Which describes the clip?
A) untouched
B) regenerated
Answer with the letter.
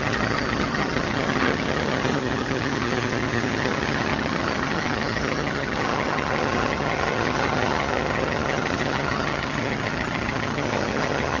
B